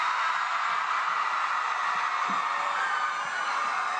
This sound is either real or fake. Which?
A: real